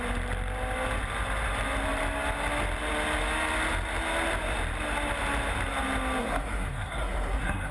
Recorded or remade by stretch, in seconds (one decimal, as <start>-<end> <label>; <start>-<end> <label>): 0.0-6.2 recorded; 6.2-7.7 remade